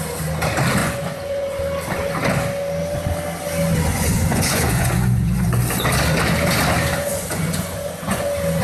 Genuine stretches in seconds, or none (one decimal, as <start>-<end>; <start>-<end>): 0.0-0.8; 1.6-3.9; 5.6-7.1; 8.2-8.6